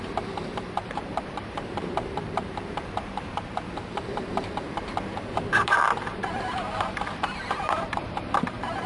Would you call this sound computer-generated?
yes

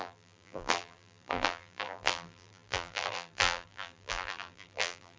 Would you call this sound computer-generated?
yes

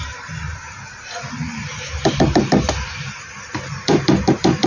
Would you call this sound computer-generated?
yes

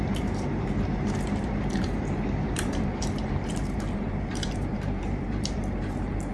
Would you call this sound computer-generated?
yes